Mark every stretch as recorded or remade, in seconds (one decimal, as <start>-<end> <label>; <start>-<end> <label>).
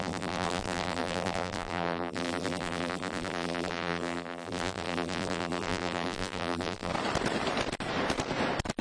0.0-6.9 remade; 6.9-8.8 recorded